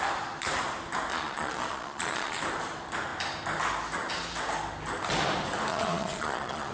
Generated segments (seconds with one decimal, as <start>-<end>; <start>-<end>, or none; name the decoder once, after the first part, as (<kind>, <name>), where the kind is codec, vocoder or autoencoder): 1.1-2.4 (vocoder, Vocos); 5.7-6.7